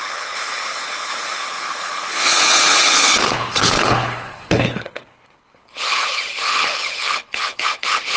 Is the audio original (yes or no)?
no